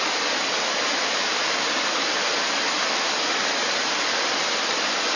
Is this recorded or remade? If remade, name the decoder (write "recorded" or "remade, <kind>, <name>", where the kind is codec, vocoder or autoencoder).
recorded